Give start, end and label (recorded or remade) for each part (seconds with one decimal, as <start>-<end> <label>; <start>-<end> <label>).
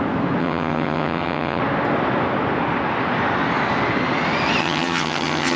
0.0-0.4 recorded; 0.4-1.6 remade; 1.6-4.6 recorded; 4.6-5.6 remade